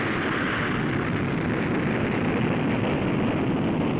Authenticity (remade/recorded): recorded